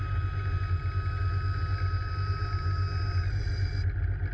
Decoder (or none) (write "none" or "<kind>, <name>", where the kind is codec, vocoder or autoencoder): none